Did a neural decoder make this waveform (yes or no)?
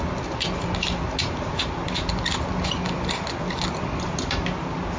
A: no